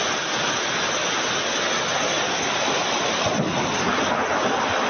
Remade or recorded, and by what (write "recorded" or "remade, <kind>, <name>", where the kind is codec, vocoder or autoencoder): recorded